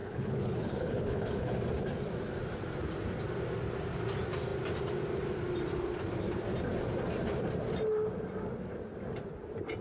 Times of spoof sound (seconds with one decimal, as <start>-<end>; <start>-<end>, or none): 0.0-1.5